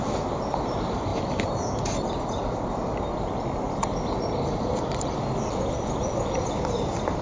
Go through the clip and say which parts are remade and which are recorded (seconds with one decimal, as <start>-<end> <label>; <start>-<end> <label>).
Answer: 0.0-7.2 recorded